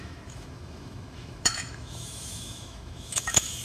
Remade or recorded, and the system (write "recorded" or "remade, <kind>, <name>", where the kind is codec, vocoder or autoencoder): remade, autoencoder, DAC-VAE